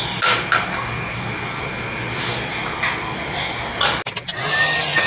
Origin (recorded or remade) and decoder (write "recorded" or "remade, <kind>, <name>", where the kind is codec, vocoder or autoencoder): recorded